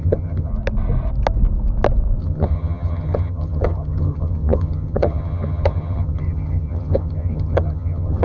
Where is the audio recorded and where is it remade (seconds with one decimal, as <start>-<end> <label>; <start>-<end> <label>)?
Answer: 0.0-0.5 remade; 0.5-2.2 recorded; 2.2-8.2 remade